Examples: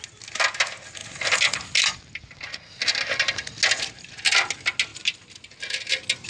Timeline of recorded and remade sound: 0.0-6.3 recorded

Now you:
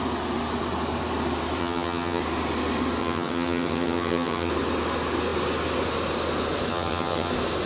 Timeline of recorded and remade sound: 0.0-1.6 recorded; 1.6-2.2 remade; 2.2-3.0 recorded; 3.0-4.5 remade; 4.5-6.7 recorded; 6.7-7.3 remade; 7.3-7.7 recorded